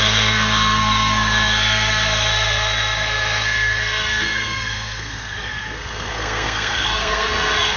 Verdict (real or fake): fake